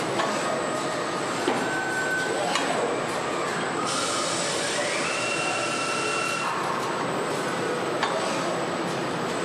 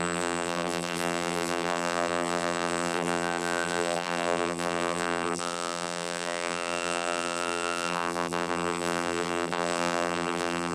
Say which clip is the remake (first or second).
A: second